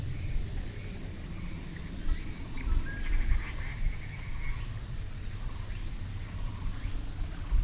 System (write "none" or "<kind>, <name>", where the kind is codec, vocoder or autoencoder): none